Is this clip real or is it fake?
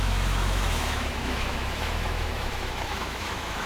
fake